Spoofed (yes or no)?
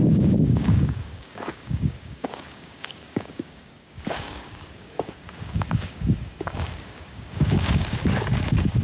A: yes